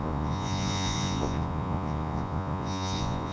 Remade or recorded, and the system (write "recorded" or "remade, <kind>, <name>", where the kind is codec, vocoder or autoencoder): remade, vocoder, Vocos